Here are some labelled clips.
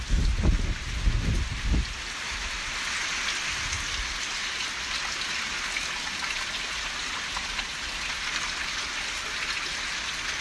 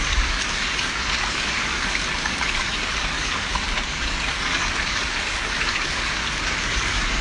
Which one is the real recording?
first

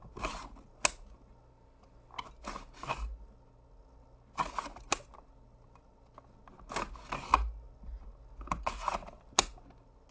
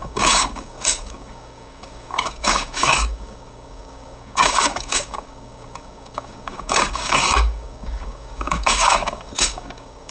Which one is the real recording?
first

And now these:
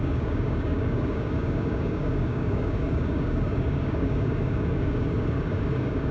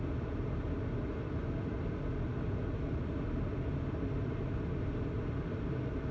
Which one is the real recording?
second